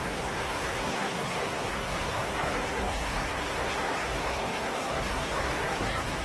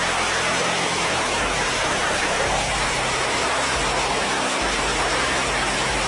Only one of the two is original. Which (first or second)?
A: second